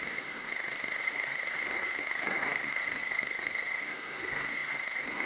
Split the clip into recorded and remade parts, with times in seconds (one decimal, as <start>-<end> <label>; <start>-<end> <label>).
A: 0.0-5.3 remade